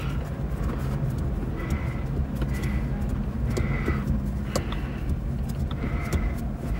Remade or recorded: recorded